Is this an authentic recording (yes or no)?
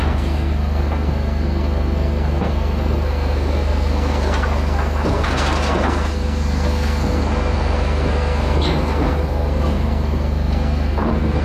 no